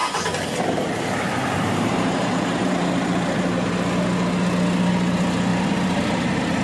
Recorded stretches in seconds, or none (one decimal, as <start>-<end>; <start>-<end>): 3.4-5.5; 6.0-6.6